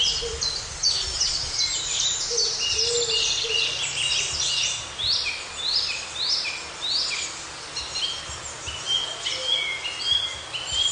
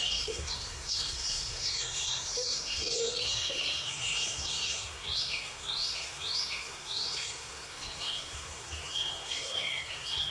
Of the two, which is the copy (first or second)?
second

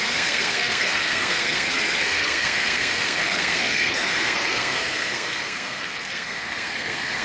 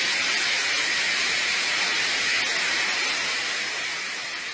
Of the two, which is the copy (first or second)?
first